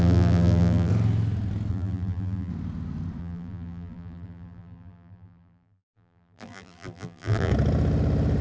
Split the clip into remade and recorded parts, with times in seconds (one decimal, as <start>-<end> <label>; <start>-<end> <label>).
0.0-0.9 remade; 0.9-1.7 recorded; 1.7-2.5 remade; 2.5-3.2 recorded; 3.2-7.5 remade; 7.5-8.4 recorded